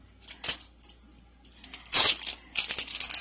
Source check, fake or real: real